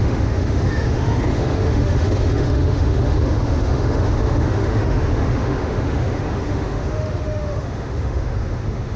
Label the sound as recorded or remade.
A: remade